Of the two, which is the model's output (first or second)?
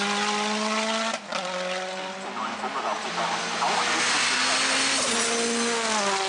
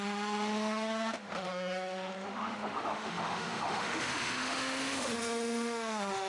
second